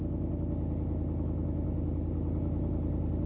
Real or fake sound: real